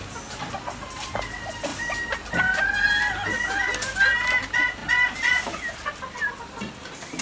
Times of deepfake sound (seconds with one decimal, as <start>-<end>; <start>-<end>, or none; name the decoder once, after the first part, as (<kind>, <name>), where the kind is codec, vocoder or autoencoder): none